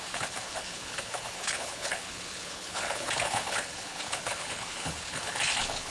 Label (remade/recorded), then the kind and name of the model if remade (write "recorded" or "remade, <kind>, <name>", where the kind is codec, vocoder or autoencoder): remade, codec, HILCodec